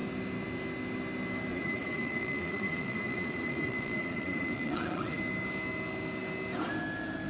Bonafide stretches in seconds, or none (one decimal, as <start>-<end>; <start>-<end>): 0.0-1.5; 5.2-7.3